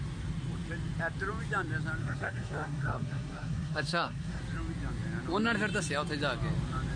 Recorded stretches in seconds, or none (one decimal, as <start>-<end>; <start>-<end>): 0.0-2.0; 4.4-7.0